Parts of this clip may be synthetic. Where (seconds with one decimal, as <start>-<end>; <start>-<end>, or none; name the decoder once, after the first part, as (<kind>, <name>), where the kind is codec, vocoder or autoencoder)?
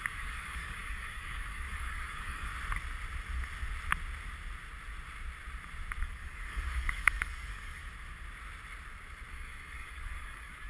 0.0-2.5 (codec, DAC); 6.0-7.8; 9.3-10.7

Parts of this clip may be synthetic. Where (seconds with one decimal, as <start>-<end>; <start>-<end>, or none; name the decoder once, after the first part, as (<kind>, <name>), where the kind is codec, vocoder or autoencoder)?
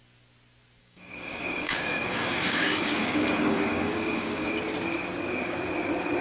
0.8-4.5 (codec, DAC)